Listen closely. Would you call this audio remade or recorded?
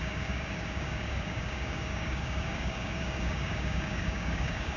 remade